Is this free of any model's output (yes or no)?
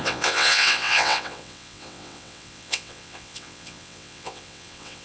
no